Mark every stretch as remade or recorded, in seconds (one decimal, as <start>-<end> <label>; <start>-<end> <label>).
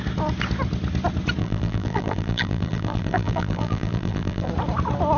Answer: 0.0-1.4 recorded; 1.4-4.5 remade; 4.5-5.2 recorded